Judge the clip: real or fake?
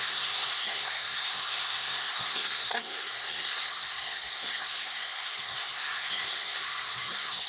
fake